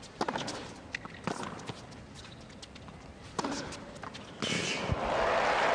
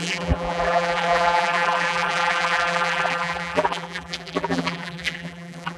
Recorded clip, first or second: first